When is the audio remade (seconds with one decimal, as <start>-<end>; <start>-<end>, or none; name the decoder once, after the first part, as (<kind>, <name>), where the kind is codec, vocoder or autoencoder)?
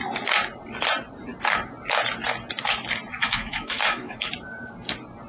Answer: 3.2-4.3 (autoencoder, DAC-VAE)